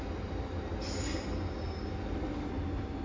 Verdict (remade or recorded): recorded